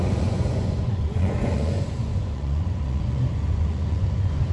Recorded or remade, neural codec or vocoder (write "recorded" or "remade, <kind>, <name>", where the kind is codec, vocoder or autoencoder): remade, vocoder, Vocos